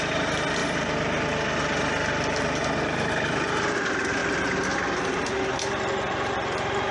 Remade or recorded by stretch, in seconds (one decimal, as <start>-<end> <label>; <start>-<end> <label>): 0.0-6.9 recorded